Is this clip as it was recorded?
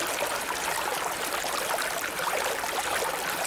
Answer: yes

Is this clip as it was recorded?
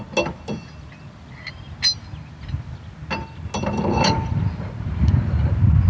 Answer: yes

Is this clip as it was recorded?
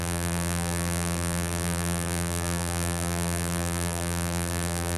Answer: no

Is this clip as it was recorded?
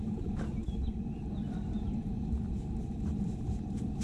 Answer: no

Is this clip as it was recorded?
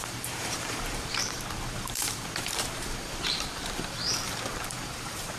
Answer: no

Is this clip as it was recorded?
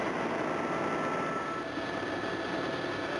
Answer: yes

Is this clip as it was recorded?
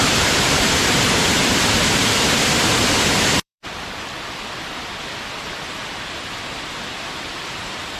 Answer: no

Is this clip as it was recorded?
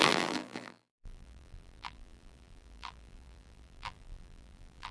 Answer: no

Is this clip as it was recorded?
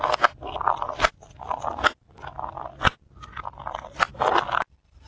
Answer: yes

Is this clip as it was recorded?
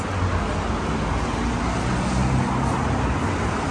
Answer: yes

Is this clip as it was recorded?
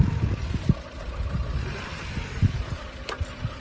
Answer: no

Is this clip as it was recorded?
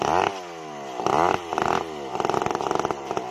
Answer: yes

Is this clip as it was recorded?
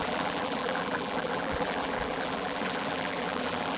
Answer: no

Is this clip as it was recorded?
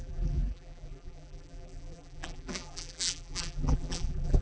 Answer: no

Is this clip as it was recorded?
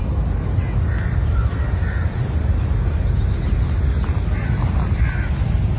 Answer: yes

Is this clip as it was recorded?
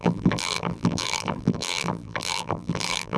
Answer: no